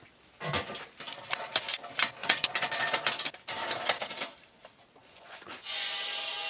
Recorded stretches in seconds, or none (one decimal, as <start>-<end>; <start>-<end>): 0.0-2.2; 2.7-5.0; 5.9-6.5